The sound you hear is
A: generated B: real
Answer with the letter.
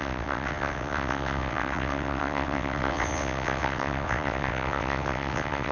A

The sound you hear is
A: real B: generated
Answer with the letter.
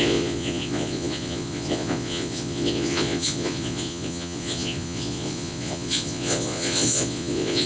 B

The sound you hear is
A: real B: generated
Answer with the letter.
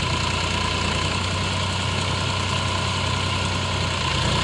A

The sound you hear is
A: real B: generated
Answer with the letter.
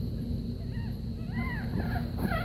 A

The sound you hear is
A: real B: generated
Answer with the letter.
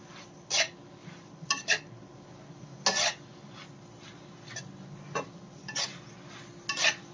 A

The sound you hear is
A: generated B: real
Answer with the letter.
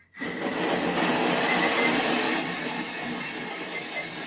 B